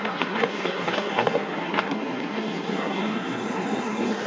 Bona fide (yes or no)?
no